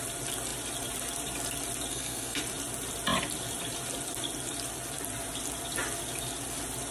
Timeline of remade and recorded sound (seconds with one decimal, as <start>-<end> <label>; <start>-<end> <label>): 0.0-1.9 recorded; 1.9-2.4 remade; 2.4-6.9 recorded